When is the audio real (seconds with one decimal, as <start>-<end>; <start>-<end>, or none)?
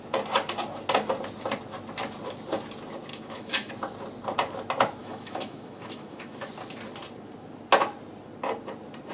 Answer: 0.0-3.1; 3.7-5.0; 6.5-9.1